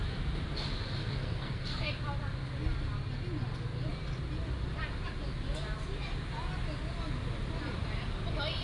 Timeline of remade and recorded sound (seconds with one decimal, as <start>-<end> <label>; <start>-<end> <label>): 0.0-1.0 recorded; 1.0-1.9 remade; 1.9-8.6 recorded